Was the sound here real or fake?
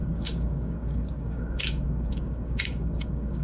fake